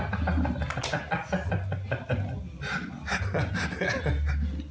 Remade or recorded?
recorded